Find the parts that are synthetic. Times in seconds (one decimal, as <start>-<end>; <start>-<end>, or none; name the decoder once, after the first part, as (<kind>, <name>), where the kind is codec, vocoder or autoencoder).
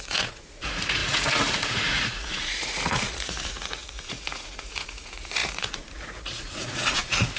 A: 0.0-7.4 (vocoder, Vocos)